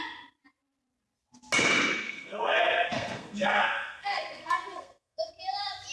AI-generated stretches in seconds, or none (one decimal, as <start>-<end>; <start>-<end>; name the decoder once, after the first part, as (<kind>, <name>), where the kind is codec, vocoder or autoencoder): 1.9-5.2 (codec, SNAC)